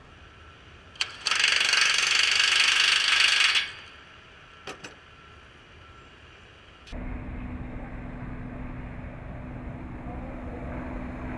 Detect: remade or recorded recorded